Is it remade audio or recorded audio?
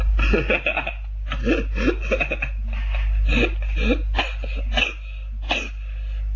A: recorded